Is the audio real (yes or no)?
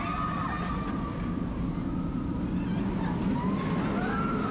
yes